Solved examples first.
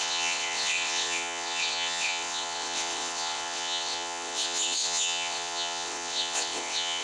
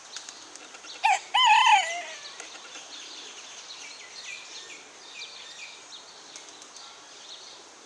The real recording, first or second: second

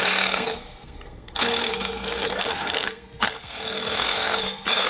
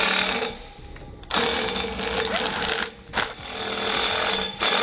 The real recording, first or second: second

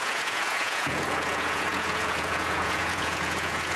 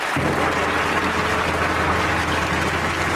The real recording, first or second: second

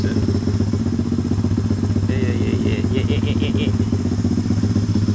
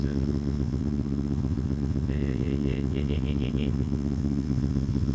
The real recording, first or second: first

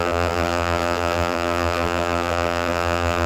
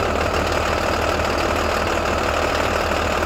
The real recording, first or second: second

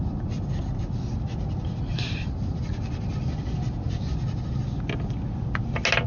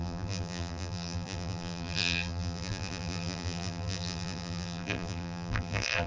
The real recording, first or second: first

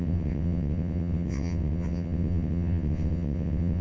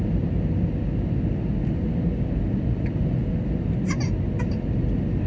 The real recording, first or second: second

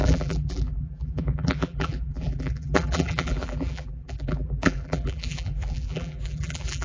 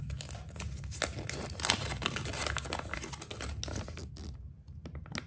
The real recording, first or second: second